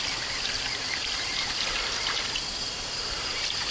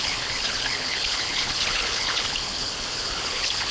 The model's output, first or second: second